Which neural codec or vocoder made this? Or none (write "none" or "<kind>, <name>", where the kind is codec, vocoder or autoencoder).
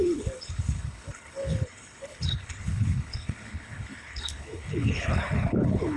codec, HILCodec